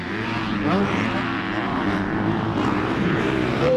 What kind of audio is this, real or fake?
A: fake